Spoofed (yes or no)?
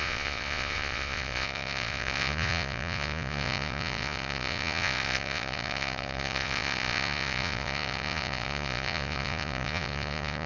yes